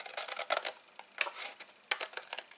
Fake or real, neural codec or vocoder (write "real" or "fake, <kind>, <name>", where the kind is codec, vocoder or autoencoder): real